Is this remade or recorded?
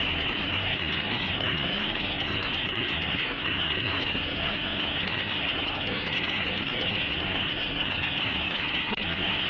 remade